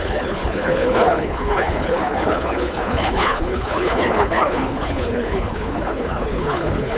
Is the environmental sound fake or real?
fake